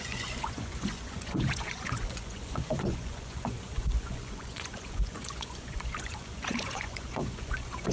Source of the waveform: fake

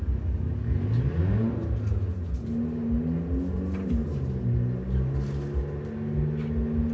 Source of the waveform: real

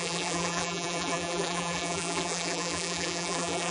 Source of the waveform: fake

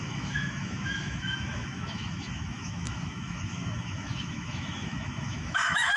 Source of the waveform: fake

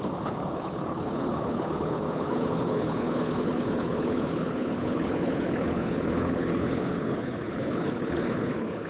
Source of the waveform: fake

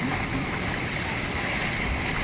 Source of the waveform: real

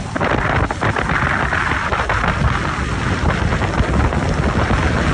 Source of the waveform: real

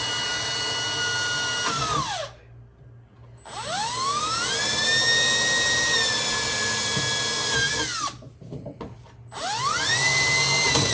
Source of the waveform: real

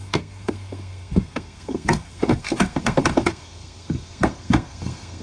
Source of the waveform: fake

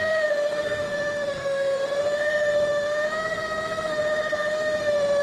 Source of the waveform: fake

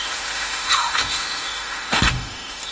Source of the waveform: fake